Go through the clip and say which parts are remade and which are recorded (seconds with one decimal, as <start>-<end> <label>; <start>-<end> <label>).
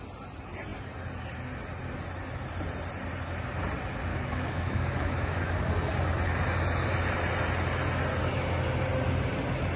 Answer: 0.0-4.1 recorded; 4.1-5.5 remade; 5.5-9.8 recorded